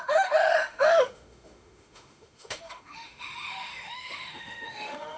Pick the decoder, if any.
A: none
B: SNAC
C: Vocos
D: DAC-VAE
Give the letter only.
D